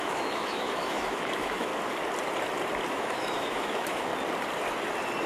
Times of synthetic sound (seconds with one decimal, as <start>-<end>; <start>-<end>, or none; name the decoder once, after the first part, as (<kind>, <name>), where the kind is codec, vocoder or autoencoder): 0.0-1.7 (autoencoder, DAC-VAE); 2.9-4.1